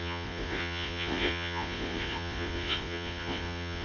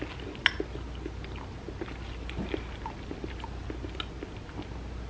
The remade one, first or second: first